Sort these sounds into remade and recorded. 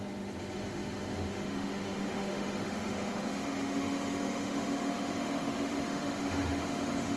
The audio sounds remade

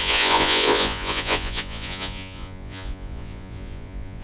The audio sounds remade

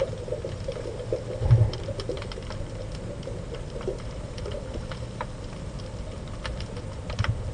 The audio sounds recorded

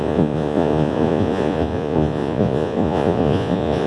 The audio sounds remade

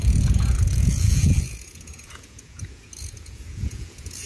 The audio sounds remade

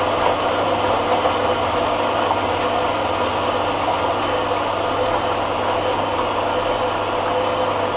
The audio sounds recorded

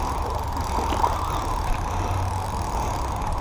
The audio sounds recorded